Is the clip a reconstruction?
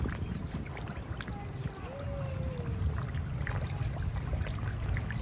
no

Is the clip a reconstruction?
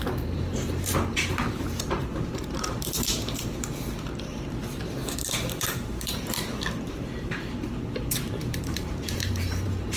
yes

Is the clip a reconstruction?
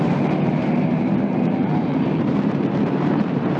yes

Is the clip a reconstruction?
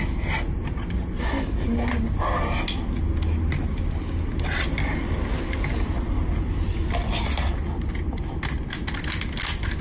no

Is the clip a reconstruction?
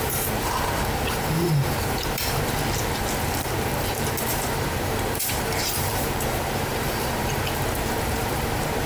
yes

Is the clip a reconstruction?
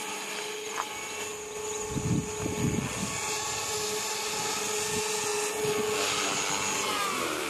no